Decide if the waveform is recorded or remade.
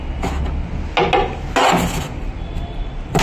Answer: recorded